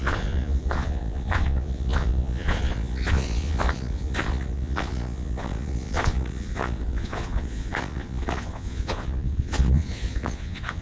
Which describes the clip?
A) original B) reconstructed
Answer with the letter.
B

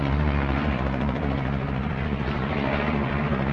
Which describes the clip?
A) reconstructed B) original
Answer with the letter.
A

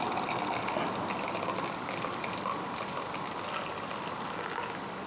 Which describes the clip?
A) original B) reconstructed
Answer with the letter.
A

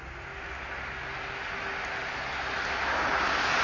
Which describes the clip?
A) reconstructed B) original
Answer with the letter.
B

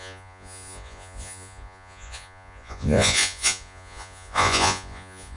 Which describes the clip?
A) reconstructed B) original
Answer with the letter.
A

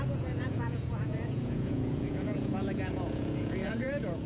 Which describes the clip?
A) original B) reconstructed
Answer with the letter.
B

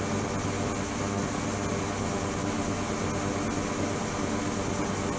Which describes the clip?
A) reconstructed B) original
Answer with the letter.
B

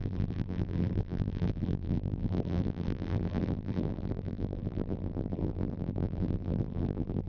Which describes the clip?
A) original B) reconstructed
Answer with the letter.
B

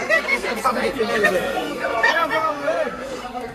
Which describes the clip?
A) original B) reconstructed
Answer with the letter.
B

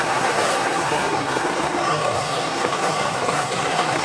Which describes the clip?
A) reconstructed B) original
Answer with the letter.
A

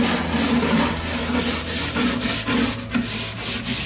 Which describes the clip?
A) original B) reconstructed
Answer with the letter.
A